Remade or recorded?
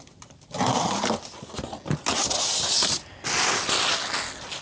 recorded